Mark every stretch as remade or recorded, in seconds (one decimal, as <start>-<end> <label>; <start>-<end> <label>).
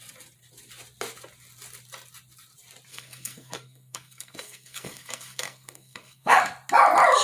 0.0-2.9 recorded; 2.9-6.4 remade; 6.4-7.2 recorded